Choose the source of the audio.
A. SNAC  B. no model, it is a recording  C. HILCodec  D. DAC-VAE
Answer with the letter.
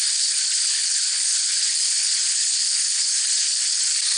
C